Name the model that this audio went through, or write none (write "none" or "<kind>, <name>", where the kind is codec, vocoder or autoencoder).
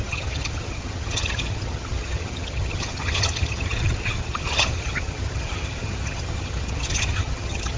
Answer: vocoder, HiFi-GAN